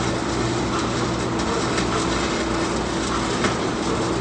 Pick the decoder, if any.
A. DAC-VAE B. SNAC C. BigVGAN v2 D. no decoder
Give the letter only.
D